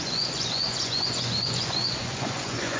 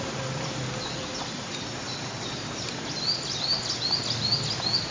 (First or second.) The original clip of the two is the second